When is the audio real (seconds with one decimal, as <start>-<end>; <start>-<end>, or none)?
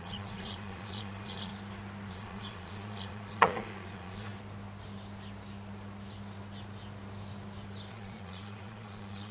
1.5-2.1; 4.3-7.9